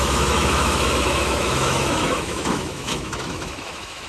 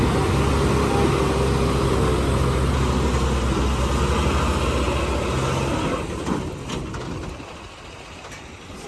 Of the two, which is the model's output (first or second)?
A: first